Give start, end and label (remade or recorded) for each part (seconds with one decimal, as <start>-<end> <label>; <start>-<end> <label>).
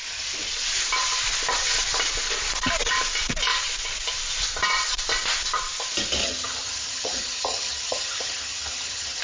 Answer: 0.0-6.2 recorded; 6.2-9.2 remade